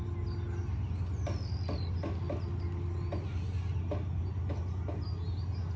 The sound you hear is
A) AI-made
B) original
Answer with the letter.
B